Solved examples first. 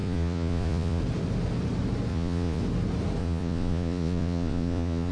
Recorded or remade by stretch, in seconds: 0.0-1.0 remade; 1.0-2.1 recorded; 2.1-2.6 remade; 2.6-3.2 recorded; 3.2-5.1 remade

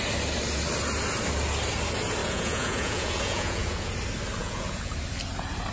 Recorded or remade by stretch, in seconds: 0.0-2.2 recorded; 2.2-3.9 remade; 3.9-4.4 recorded; 4.4-4.9 remade; 4.9-5.7 recorded

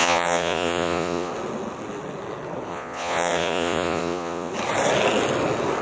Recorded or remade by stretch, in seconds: 0.0-1.3 remade; 1.3-2.7 recorded; 2.7-4.5 remade; 4.5-5.8 recorded

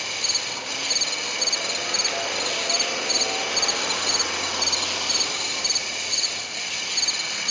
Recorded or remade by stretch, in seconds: 0.0-5.8 recorded; 5.8-6.4 remade; 6.4-7.5 recorded

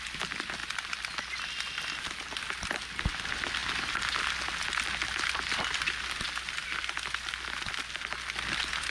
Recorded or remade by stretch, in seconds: 0.0-8.9 recorded